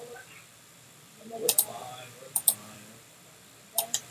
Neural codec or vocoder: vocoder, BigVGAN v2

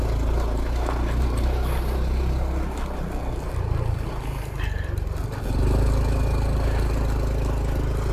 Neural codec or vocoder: none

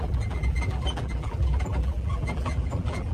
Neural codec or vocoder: vocoder, BigVGAN v2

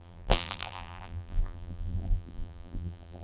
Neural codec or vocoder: vocoder, BigVGAN v2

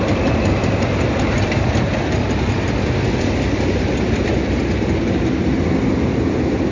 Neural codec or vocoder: none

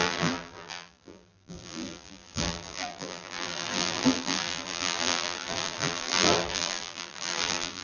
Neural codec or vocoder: vocoder, BigVGAN v2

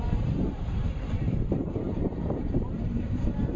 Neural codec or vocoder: vocoder, BigVGAN v2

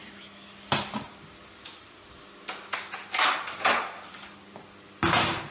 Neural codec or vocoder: none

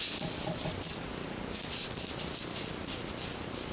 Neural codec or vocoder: none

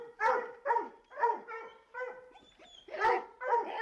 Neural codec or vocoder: vocoder, BigVGAN v2